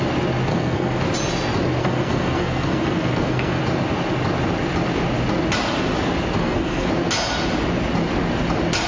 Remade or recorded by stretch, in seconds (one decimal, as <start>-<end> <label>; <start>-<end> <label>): 0.0-0.5 recorded; 0.5-1.0 remade; 1.0-1.8 recorded; 1.8-3.6 remade; 3.6-6.4 recorded; 6.4-6.9 remade; 6.9-8.9 recorded